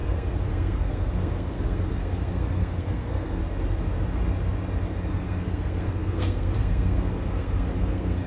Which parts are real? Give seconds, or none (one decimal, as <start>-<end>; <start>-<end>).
3.4-5.1